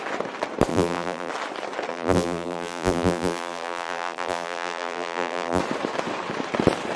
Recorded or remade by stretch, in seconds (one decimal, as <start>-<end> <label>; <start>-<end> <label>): 0.0-0.7 recorded; 0.7-1.3 remade; 1.3-1.9 recorded; 1.9-5.6 remade; 5.6-7.0 recorded